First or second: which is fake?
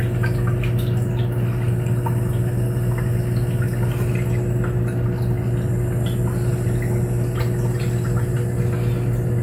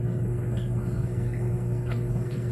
second